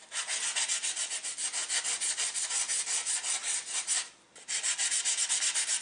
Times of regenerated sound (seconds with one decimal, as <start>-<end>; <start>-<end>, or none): none